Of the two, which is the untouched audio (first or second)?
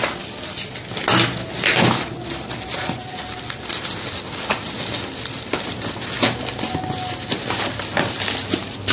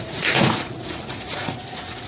first